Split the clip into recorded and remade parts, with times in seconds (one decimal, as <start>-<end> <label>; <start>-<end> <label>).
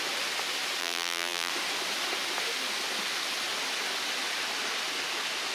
0.0-0.8 recorded; 0.8-1.5 remade; 1.5-5.5 recorded